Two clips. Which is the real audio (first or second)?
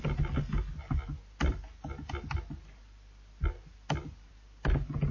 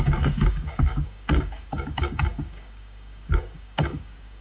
first